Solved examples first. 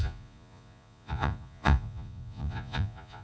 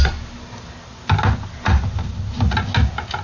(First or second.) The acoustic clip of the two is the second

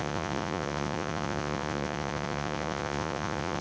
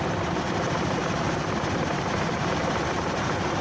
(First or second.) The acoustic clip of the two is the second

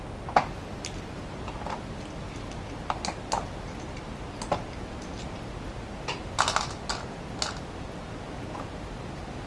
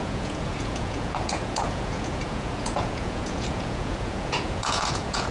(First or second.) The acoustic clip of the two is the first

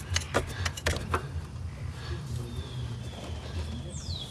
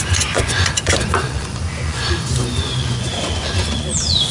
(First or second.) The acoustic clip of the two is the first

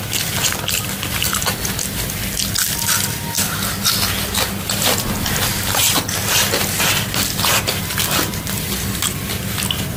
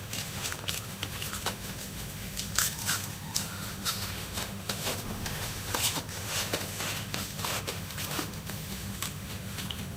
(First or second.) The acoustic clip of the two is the first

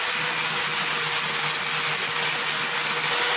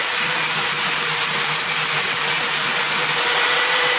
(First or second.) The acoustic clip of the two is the first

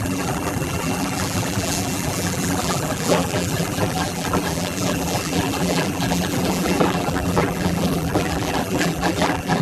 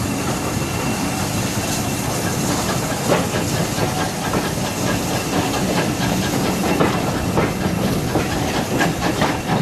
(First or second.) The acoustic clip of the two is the second